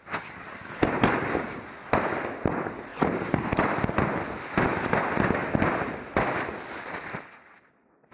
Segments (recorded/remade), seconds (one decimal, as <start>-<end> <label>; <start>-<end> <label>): 0.0-8.1 recorded